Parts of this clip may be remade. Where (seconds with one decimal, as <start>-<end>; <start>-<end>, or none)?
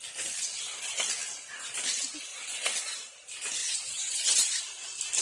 2.3-3.1; 3.6-4.6